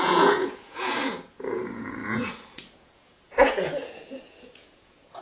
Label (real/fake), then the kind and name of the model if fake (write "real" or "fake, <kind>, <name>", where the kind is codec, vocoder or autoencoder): fake, vocoder, Vocos